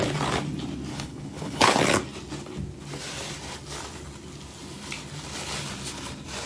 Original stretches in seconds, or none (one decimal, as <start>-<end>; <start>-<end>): 0.0-0.9; 1.8-6.5